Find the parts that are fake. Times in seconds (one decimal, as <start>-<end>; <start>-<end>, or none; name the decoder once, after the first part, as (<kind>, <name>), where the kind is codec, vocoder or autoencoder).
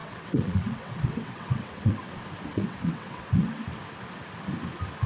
0.0-2.1 (vocoder, WaveNeXt); 2.5-3.8